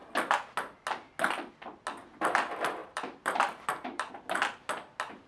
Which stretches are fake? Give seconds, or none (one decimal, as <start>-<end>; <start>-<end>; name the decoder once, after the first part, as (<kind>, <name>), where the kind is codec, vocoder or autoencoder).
2.8-4.1 (vocoder, BigVGAN v2)